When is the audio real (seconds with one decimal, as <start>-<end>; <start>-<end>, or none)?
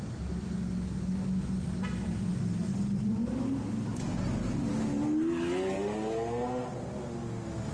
0.0-7.7